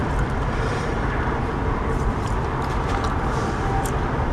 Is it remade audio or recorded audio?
remade